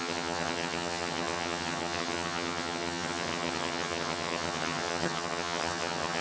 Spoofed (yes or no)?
yes